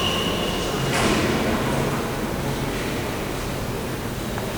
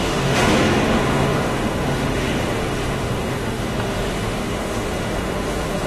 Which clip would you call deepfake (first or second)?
second